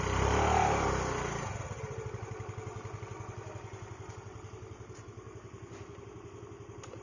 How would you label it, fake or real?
real